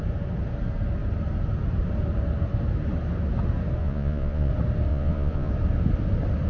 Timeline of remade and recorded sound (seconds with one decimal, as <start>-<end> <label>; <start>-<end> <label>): 0.0-3.8 recorded; 3.8-4.5 remade; 4.5-4.9 recorded; 4.9-5.5 remade; 5.5-6.5 recorded